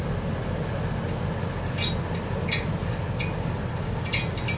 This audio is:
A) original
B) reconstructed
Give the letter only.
A